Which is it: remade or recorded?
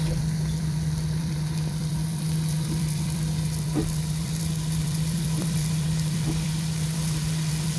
remade